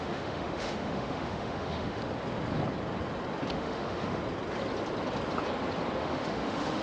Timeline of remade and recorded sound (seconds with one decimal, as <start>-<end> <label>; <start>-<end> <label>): 0.0-2.0 remade; 2.0-3.5 recorded; 3.5-4.2 remade; 4.2-6.0 recorded; 6.0-6.8 remade